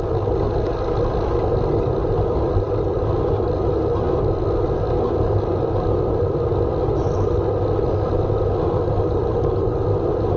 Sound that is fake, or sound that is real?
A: real